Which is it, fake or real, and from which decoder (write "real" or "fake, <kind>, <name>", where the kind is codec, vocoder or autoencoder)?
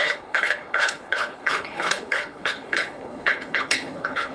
fake, codec, HILCodec